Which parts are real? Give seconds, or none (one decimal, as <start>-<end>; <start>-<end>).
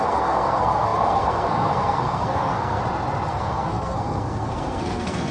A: 2.8-3.3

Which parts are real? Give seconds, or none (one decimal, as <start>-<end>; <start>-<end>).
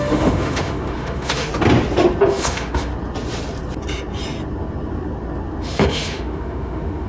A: 1.5-2.3; 2.9-5.6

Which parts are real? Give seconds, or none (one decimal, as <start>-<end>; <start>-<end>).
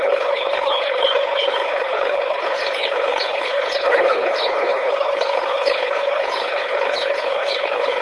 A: none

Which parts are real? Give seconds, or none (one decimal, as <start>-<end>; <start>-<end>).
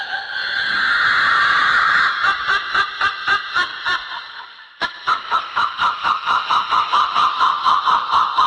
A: 0.4-1.5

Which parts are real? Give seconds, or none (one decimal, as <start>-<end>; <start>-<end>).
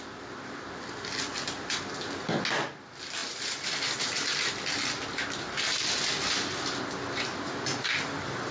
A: 0.0-8.5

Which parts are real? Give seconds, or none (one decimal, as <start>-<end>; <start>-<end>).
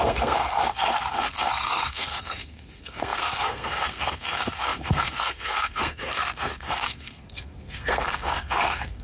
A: none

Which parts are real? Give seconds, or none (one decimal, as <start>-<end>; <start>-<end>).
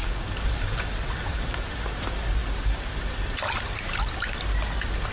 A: 0.0-5.1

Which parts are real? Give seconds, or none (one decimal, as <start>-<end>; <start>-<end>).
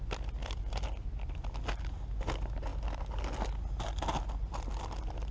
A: 0.0-5.3